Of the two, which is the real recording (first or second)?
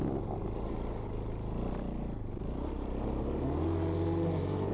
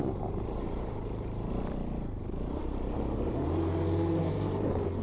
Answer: first